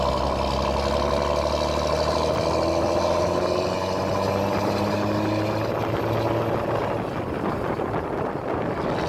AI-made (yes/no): no